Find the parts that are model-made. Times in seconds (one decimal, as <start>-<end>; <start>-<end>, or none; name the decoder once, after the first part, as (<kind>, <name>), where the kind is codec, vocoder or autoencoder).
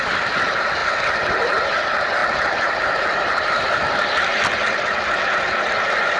none